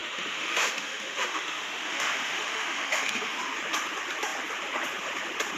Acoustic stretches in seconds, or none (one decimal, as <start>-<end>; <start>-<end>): 3.4-5.6